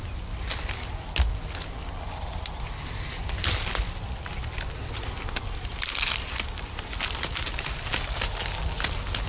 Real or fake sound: real